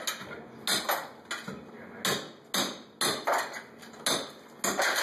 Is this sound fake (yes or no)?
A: no